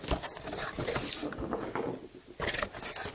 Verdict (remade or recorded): recorded